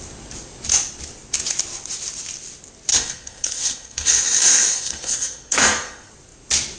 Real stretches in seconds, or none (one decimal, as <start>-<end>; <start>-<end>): 0.0-2.9; 6.1-6.8